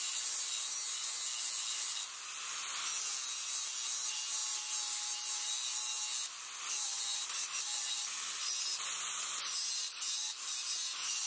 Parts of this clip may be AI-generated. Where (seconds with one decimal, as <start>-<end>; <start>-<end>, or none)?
9.5-10.1